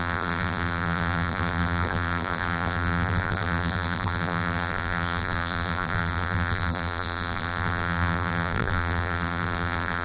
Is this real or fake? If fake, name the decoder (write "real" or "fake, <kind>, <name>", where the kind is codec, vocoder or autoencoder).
fake, vocoder, BigVGAN v2